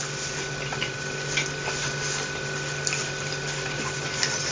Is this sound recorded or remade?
recorded